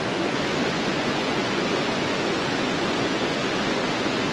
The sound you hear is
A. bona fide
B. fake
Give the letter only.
B